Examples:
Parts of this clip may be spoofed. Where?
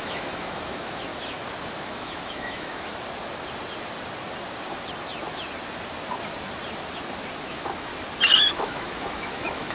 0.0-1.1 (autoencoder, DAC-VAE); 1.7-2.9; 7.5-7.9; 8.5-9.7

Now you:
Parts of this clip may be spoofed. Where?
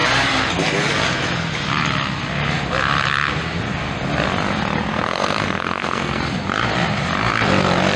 4.9-6.2 (codec, SNAC)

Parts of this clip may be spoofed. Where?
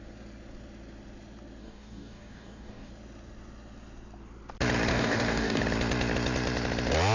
1.6-2.9 (codec, DAC); 4.9-5.6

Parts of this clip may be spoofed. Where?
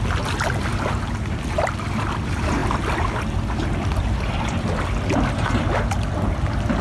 none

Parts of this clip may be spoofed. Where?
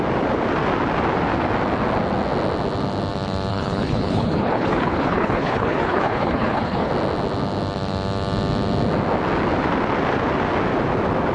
3.5-6.9 (codec, HILCodec)